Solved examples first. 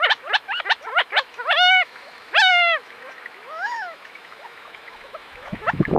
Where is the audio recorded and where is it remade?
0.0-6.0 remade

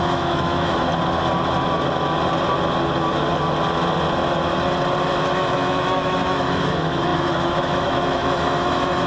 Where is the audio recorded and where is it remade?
0.0-0.9 remade; 0.9-5.2 recorded; 5.2-9.1 remade

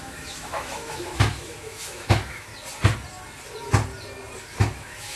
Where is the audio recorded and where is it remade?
0.0-2.5 remade; 2.5-4.4 recorded; 4.4-5.2 remade

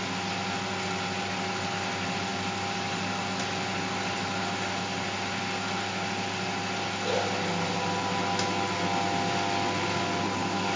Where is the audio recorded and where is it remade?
0.0-10.8 recorded

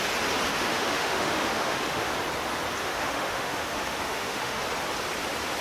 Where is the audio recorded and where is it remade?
0.0-0.5 recorded; 0.5-2.1 remade; 2.1-2.8 recorded; 2.8-4.6 remade; 4.6-5.6 recorded

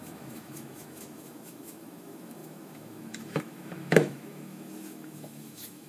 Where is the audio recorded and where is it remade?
0.0-5.9 remade